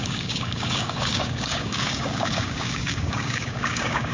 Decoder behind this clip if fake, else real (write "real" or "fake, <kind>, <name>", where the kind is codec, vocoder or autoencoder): fake, codec, DAC